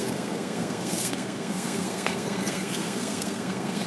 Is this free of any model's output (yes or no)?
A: no